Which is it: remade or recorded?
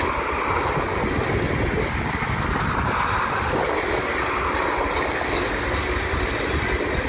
recorded